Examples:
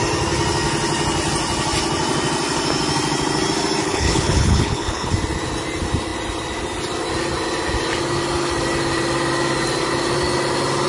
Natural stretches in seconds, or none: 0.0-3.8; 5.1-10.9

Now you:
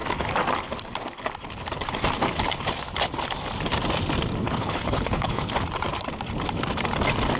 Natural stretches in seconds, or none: 0.0-4.4; 5.5-7.4

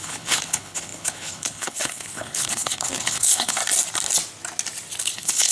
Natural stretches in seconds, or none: 3.6-5.0